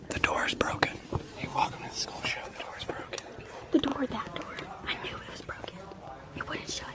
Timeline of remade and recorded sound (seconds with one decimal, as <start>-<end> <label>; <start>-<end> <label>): 0.0-1.5 recorded; 1.5-2.2 remade; 2.2-6.9 recorded